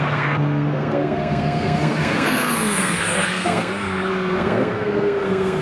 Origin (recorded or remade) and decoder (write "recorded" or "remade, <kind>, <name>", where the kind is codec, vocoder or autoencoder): remade, codec, SNAC